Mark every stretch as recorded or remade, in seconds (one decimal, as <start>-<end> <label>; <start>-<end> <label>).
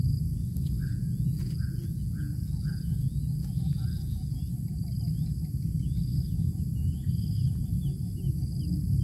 0.0-0.9 recorded; 0.9-4.4 remade; 4.4-9.0 recorded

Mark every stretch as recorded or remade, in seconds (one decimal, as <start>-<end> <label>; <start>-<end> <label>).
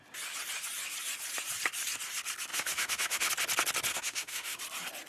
0.0-2.5 recorded; 2.5-3.3 remade; 3.3-3.9 recorded; 3.9-4.6 remade; 4.6-5.1 recorded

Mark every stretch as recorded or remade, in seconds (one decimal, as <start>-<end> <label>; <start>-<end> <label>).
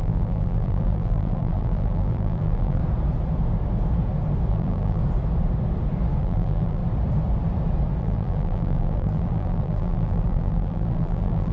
0.0-2.8 remade; 2.8-4.5 recorded; 4.5-5.0 remade; 5.0-6.2 recorded; 6.2-6.8 remade; 6.8-8.0 recorded; 8.0-11.5 remade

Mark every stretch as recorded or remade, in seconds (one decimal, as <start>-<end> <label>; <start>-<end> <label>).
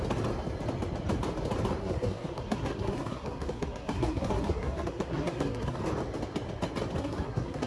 0.0-1.8 recorded; 1.8-5.8 remade; 5.8-7.0 recorded; 7.0-7.7 remade